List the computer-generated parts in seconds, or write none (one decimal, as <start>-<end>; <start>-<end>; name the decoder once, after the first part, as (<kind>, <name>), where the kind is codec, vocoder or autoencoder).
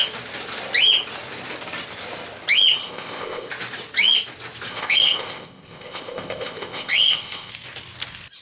2.8-3.5 (codec, ZipCodec); 4.7-7.5